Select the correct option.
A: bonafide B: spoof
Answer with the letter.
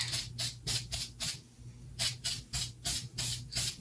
B